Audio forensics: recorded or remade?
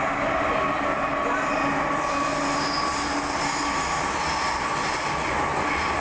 recorded